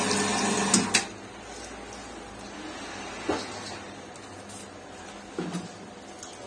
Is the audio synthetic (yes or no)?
no